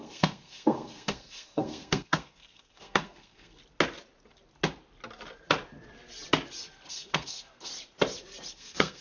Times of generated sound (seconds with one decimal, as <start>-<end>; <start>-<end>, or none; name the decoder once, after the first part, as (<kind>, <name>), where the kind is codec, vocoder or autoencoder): 0.0-3.6 (codec, SNAC); 6.9-7.7; 8.5-9.0